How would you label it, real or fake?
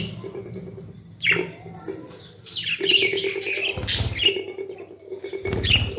real